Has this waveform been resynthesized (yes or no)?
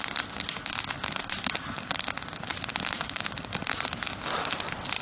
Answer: no